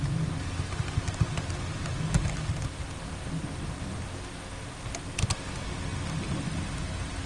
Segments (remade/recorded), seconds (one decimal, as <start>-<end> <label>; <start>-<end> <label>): 0.0-7.3 recorded